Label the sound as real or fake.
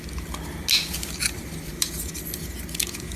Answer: real